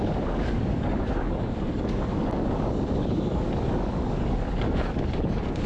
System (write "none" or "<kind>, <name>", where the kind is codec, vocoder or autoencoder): codec, DAC